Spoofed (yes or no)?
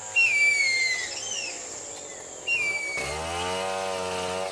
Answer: no